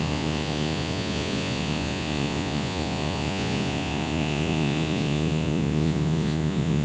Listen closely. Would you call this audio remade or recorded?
remade